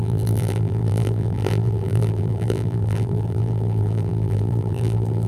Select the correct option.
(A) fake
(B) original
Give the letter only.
A